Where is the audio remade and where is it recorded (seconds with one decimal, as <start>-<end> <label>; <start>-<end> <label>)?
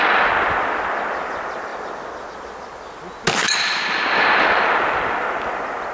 0.0-5.9 recorded